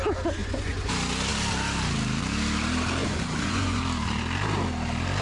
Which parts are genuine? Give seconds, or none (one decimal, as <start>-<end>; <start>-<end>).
0.0-0.4; 0.9-3.0; 3.8-5.2